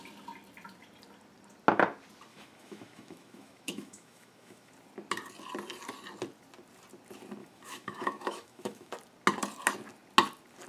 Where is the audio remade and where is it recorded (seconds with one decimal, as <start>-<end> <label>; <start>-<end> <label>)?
0.0-2.3 recorded; 2.3-4.7 remade; 4.7-7.4 recorded; 7.4-8.9 remade; 8.9-10.7 recorded